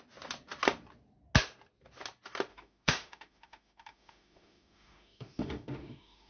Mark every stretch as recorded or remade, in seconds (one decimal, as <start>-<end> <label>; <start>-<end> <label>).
0.0-2.5 recorded; 2.5-6.3 remade